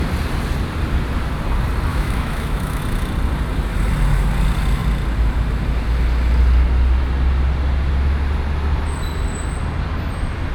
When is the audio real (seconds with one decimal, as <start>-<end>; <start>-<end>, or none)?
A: 0.0-1.9; 2.8-10.5